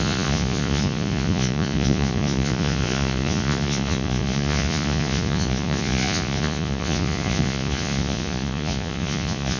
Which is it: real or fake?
fake